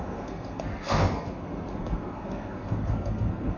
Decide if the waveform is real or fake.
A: fake